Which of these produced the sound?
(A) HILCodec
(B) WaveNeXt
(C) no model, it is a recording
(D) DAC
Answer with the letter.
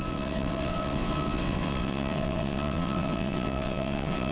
B